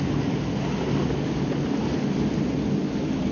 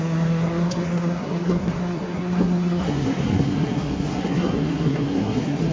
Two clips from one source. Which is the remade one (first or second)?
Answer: second